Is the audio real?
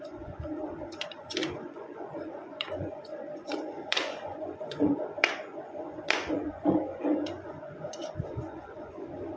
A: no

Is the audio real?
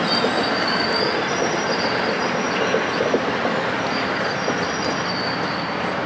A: yes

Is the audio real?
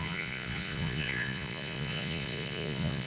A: no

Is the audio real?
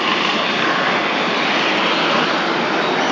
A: yes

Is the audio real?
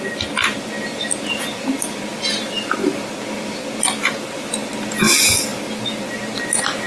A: yes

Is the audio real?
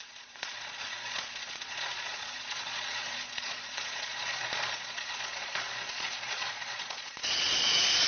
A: no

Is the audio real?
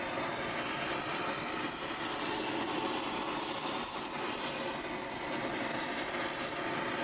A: yes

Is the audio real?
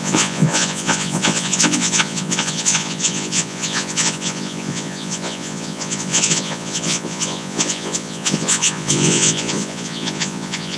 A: no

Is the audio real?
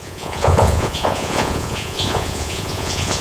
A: no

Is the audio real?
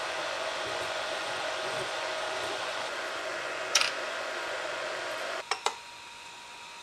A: no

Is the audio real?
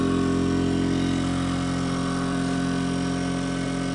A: yes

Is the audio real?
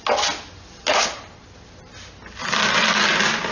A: yes